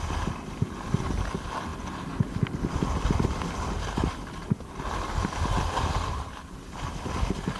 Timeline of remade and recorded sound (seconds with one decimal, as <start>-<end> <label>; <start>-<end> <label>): 0.0-7.6 recorded